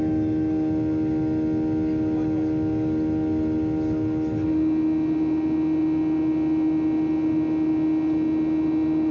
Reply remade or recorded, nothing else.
recorded